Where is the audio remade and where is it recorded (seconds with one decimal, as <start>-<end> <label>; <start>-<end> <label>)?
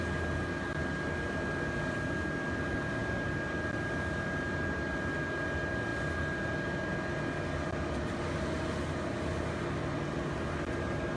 0.0-11.2 recorded